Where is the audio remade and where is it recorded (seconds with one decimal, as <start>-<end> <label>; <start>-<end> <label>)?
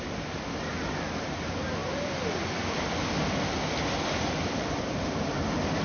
0.0-1.8 recorded; 1.8-4.8 remade; 4.8-5.8 recorded